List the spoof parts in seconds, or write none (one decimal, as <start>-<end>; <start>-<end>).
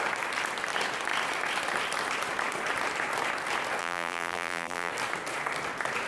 3.8-4.9